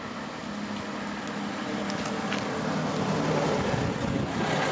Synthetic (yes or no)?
no